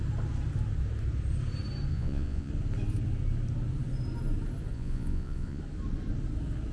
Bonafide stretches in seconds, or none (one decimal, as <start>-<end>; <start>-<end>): 0.0-1.9; 2.5-4.7; 5.6-6.7